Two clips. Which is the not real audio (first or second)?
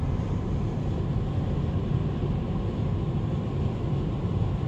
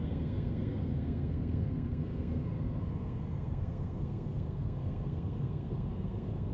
second